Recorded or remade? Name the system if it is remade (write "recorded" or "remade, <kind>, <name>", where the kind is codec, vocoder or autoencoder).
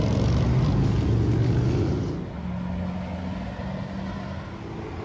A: recorded